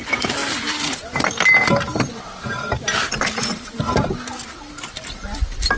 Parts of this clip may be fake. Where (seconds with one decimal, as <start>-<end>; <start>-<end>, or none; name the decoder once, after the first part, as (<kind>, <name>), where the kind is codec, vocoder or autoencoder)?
none